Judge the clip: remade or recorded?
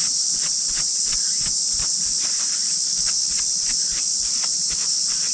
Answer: recorded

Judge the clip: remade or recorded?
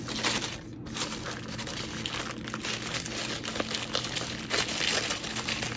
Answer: recorded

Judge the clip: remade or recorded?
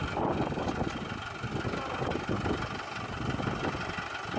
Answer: recorded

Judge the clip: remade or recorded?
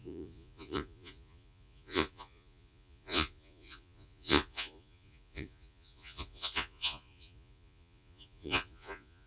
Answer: remade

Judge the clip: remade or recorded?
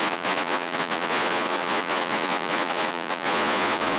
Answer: remade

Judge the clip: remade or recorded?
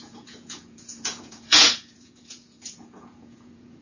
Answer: remade